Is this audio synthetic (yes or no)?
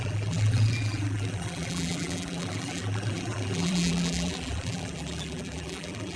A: yes